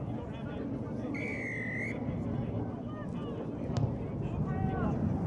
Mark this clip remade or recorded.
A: recorded